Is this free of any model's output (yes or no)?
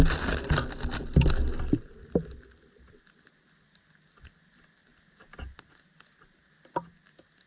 yes